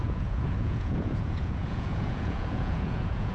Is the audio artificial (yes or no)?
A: yes